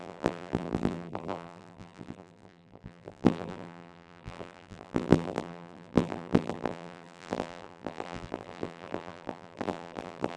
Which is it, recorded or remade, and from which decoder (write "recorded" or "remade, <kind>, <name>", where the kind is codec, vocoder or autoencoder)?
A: remade, vocoder, BigVGAN v2